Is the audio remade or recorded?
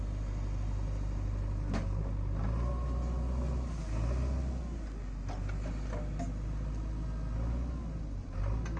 recorded